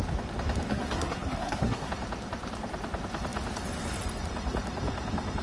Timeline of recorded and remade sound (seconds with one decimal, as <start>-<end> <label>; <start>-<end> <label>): 0.0-0.7 recorded; 0.7-1.9 remade; 1.9-5.4 recorded